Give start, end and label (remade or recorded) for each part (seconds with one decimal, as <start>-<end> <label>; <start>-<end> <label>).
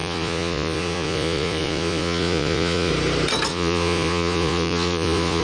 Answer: 0.0-2.9 remade; 2.9-3.5 recorded; 3.5-5.4 remade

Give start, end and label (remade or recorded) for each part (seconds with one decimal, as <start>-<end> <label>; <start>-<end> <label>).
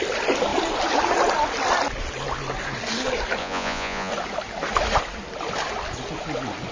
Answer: 0.0-3.4 recorded; 3.4-4.1 remade; 4.1-6.7 recorded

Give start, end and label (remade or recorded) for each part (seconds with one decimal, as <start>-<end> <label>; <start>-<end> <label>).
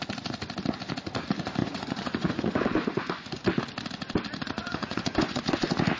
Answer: 0.0-1.6 recorded; 1.6-3.4 remade; 3.4-4.6 recorded; 4.6-5.4 remade; 5.4-6.0 recorded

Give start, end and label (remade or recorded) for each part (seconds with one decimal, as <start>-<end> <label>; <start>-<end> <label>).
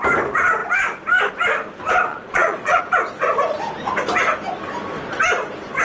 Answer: 0.0-2.1 recorded; 2.1-2.8 remade; 2.8-5.8 recorded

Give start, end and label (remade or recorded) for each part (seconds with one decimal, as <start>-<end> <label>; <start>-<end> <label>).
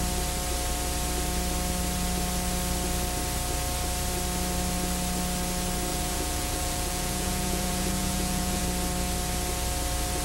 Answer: 0.0-5.9 recorded; 5.9-8.6 remade; 8.6-10.2 recorded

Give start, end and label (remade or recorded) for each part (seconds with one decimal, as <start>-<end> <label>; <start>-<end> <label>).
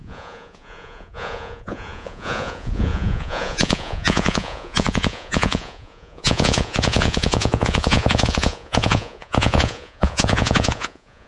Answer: 0.0-11.3 remade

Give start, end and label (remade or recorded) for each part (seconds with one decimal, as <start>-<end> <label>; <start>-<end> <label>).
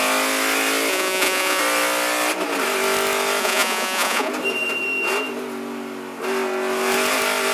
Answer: 0.0-0.9 recorded; 0.9-1.6 remade; 1.6-3.4 recorded; 3.4-4.3 remade; 4.3-7.5 recorded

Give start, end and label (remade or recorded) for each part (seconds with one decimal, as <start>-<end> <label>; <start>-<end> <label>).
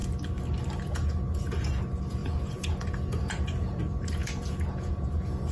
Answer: 0.0-0.8 recorded; 0.8-5.5 remade